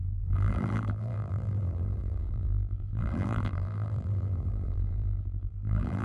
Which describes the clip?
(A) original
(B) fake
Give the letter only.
B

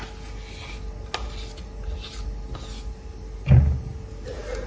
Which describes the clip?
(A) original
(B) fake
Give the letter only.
A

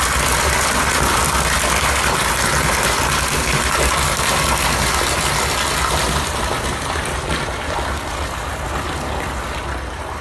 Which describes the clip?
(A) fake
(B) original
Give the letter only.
B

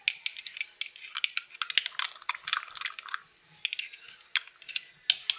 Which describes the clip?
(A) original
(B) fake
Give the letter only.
A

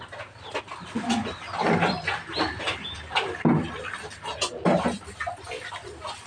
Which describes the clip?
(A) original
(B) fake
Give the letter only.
A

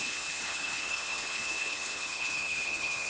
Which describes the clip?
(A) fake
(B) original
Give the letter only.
A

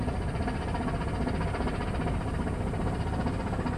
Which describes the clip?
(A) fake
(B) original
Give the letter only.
B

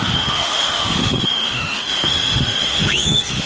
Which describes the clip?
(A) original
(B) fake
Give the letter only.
B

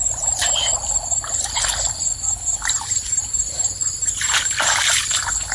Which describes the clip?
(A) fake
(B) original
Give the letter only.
B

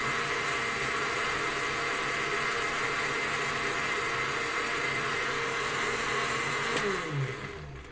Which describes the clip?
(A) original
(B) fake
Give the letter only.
A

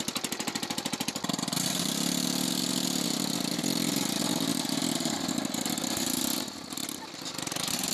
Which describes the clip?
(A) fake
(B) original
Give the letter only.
B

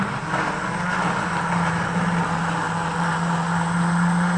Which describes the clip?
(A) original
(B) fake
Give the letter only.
A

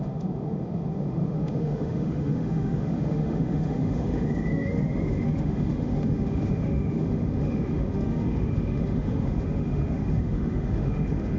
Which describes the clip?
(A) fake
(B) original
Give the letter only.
A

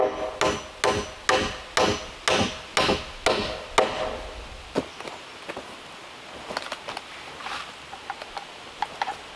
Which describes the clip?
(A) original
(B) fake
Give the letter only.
A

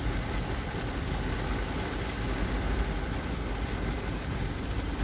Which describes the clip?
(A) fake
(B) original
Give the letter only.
B